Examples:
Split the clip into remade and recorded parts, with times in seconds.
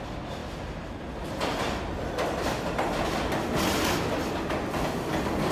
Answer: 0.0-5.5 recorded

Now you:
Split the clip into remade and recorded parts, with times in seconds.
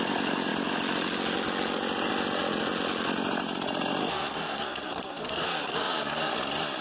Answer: 0.0-4.0 recorded; 4.0-6.3 remade; 6.3-6.8 recorded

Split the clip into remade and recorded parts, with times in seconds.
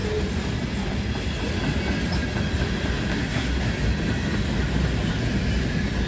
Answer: 0.0-3.1 recorded; 3.1-3.7 remade; 3.7-6.1 recorded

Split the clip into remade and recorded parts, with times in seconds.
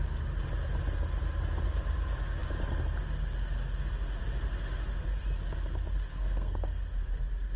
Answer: 0.0-6.1 recorded; 6.1-6.8 remade; 6.8-7.6 recorded